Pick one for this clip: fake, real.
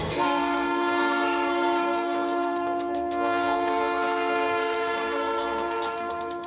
fake